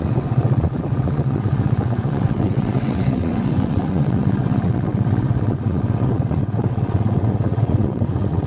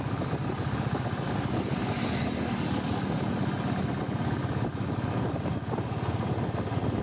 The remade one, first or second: first